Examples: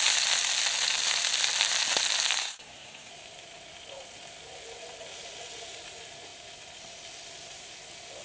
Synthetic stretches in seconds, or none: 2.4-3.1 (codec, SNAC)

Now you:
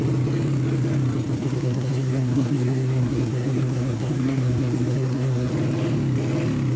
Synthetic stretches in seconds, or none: 1.4-5.5 (codec, SNAC)

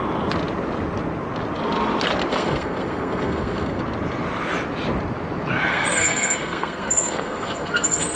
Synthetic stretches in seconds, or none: 2.3-3.8 (codec, SNAC); 5.7-8.2